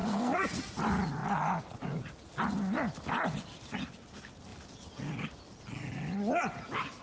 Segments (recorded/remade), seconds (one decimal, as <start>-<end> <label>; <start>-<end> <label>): 0.0-0.6 remade; 0.6-7.0 recorded